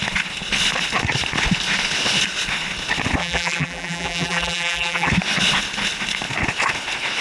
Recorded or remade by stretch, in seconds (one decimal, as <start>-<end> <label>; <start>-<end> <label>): 0.0-3.2 recorded; 3.2-5.1 remade; 5.1-7.2 recorded